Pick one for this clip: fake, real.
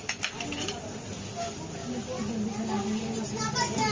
real